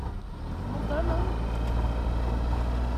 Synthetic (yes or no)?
no